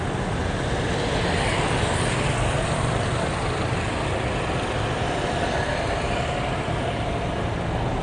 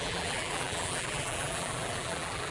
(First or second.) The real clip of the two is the first